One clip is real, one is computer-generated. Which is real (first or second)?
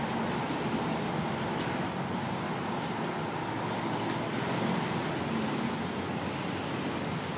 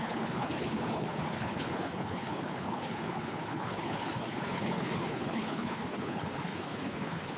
first